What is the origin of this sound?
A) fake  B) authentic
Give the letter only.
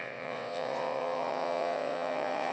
A